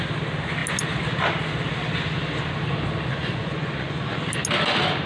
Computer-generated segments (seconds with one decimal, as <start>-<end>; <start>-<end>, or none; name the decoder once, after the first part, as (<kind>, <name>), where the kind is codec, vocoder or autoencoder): 3.1-4.2 (vocoder, Vocos)